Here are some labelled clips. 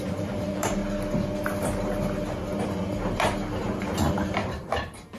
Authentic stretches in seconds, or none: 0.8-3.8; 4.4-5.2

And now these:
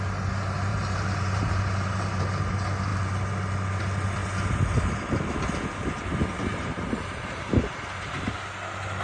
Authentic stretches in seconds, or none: 0.0-0.7; 2.2-6.5; 8.3-9.0

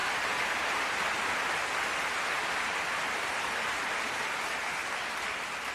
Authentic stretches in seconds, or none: 0.0-3.4

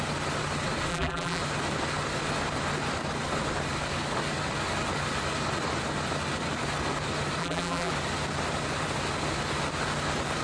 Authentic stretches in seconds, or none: 0.0-0.9; 1.4-7.4; 7.9-10.4

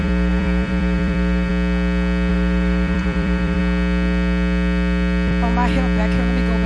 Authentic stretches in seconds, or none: 1.5-2.3; 3.6-6.7